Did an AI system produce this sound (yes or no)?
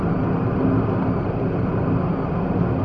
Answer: no